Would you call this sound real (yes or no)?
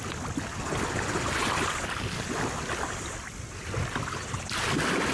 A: yes